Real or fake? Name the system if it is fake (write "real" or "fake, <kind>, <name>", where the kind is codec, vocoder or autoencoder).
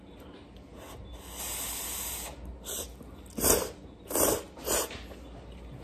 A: real